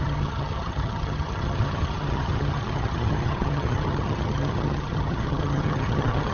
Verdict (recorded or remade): remade